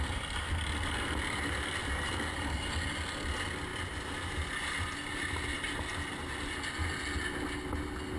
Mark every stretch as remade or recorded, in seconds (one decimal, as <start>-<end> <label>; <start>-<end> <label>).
0.0-3.7 recorded; 3.7-6.1 remade; 6.1-8.2 recorded